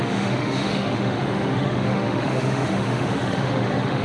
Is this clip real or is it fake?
fake